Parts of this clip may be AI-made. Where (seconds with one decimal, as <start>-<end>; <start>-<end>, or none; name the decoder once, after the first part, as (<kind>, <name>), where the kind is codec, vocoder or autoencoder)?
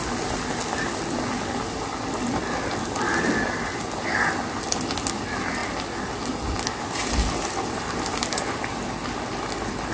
none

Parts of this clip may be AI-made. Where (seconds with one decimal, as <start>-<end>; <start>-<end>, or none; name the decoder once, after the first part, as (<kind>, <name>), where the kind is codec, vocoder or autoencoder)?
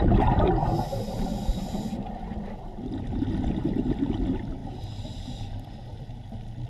0.9-2.3 (vocoder, BigVGAN v2)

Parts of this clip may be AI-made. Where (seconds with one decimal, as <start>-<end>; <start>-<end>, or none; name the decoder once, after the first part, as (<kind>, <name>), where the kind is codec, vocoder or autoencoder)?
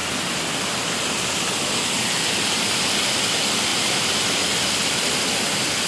3.7-4.2 (vocoder, BigVGAN v2)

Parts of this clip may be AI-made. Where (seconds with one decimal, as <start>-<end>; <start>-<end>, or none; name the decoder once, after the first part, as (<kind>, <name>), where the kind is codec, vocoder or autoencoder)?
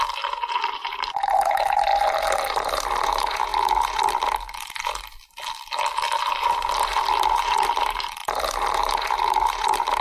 0.0-1.9 (vocoder, BigVGAN v2); 2.5-3.5; 6.2-10.0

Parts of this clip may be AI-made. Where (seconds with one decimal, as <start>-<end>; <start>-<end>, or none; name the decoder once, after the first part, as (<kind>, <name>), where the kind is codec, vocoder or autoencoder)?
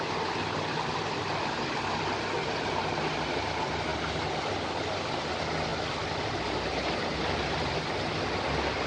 none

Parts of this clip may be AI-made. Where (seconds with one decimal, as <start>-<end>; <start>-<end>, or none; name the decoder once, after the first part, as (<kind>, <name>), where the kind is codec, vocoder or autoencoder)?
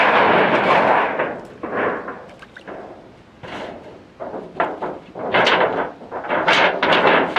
none